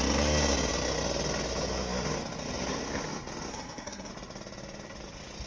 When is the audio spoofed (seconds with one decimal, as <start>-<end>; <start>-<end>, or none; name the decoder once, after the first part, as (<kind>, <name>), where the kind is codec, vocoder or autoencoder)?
3.5-4.1 (codec, SNAC)